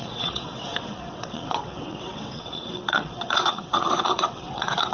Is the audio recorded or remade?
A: remade